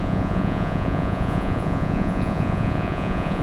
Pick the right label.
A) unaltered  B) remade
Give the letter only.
B